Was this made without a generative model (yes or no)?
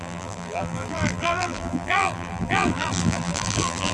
no